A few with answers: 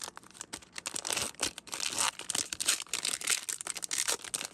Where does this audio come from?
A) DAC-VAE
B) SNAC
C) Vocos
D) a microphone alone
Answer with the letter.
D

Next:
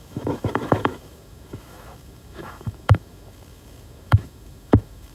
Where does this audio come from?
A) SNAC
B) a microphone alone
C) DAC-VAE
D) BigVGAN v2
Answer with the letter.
C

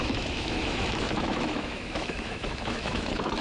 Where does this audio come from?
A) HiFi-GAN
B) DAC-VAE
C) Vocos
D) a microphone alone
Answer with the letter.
B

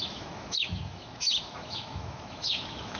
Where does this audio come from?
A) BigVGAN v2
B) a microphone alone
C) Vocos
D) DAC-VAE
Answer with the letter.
D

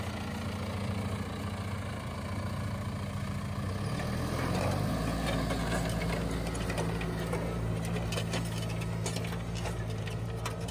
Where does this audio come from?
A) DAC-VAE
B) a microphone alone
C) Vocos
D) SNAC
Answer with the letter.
B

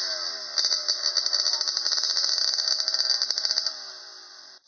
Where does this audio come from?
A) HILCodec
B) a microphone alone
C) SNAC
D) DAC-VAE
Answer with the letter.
B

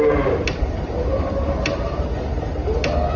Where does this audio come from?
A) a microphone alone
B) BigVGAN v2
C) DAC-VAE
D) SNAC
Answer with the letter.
A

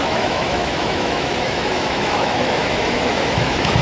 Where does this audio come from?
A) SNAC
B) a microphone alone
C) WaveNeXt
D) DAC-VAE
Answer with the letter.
D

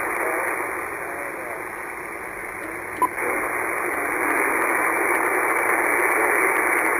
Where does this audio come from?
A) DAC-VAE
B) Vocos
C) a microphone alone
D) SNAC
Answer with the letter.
C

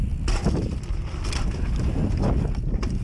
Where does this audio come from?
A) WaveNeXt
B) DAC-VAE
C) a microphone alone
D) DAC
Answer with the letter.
C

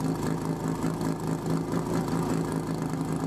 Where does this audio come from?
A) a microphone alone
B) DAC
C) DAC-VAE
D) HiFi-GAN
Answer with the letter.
A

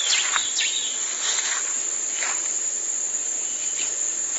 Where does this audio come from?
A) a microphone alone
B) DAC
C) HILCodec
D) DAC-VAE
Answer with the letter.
A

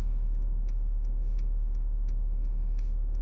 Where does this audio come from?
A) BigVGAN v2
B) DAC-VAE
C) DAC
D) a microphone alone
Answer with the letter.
B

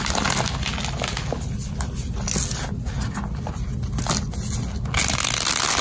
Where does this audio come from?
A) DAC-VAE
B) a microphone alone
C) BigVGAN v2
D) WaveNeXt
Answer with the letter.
B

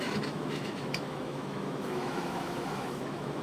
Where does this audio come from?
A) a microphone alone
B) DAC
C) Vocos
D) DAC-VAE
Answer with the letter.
D